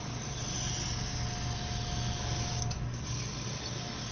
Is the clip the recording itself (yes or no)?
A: yes